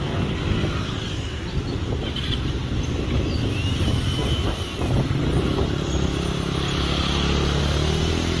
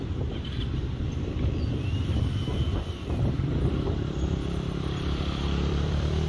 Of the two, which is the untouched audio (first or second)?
first